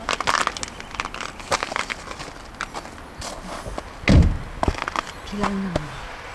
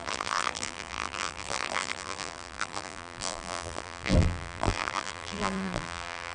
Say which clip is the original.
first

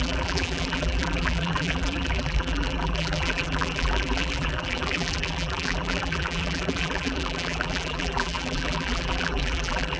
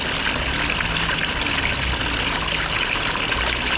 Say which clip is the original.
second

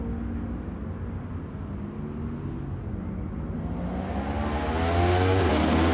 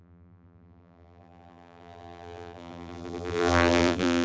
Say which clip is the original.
first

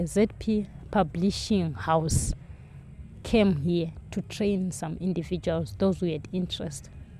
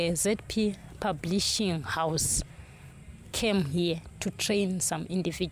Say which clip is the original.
first